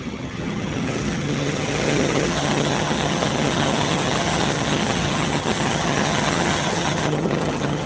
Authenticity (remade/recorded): remade